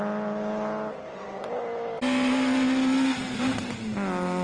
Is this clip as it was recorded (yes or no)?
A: yes